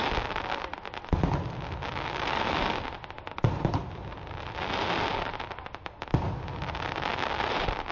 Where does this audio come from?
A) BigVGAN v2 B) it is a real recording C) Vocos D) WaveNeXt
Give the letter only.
B